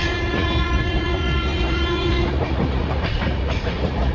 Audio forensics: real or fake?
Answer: fake